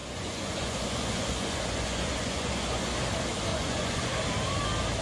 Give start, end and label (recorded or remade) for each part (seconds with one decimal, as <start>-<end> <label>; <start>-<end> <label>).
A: 0.0-2.9 remade; 2.9-3.5 recorded; 3.5-4.1 remade; 4.1-5.0 recorded